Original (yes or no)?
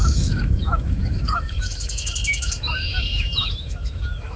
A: no